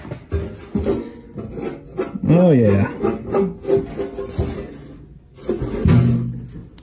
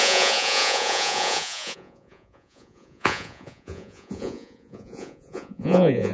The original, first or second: first